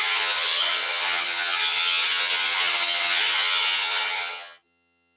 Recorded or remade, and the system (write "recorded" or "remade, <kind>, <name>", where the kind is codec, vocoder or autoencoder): remade, vocoder, HiFi-GAN